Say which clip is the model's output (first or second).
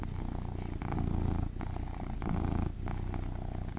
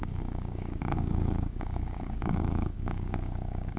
second